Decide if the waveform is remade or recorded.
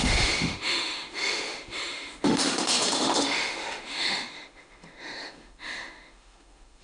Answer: remade